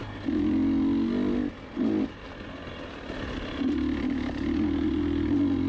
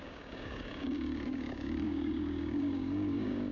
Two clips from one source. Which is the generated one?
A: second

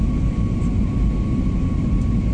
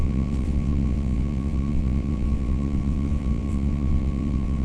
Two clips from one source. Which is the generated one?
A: second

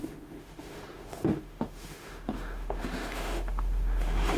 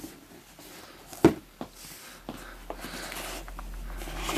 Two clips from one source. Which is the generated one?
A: first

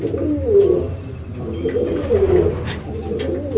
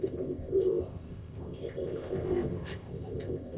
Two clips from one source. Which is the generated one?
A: second